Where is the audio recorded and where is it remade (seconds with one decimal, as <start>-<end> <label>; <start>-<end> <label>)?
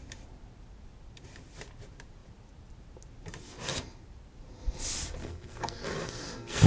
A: 0.0-5.2 recorded; 5.2-6.7 remade